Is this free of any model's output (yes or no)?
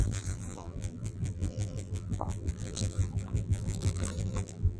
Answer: no